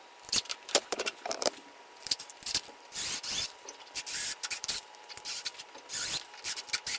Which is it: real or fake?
fake